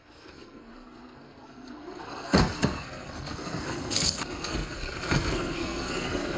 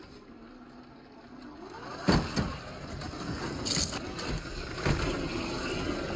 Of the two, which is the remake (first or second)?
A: first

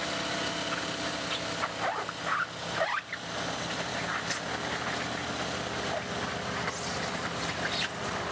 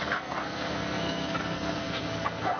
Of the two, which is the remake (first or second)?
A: second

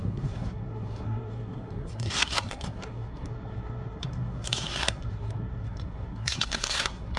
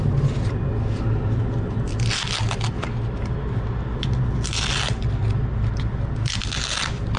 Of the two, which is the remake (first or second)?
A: first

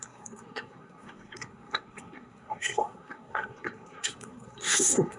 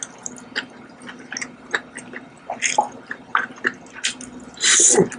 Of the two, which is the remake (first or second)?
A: first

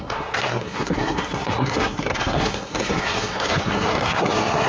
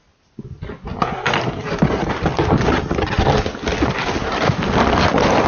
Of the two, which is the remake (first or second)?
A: first